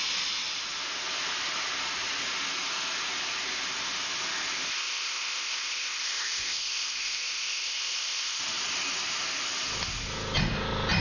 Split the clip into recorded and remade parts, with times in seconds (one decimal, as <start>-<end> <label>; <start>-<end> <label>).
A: 0.0-4.7 recorded; 4.7-8.4 remade; 8.4-11.0 recorded